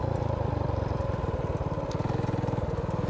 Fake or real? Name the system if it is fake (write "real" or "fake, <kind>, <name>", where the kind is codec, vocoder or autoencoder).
real